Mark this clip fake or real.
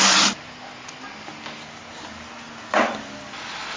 real